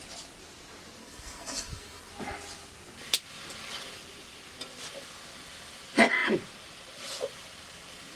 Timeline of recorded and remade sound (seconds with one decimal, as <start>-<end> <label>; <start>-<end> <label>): 0.0-1.0 recorded; 1.0-2.1 remade; 2.1-8.2 recorded